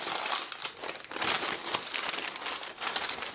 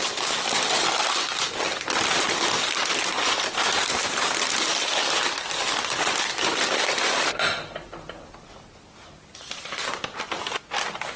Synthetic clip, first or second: second